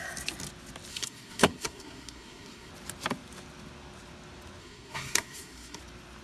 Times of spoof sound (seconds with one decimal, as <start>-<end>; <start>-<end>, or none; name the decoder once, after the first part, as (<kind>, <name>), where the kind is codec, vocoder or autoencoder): 0.9-2.7 (codec, SNAC); 4.6-5.8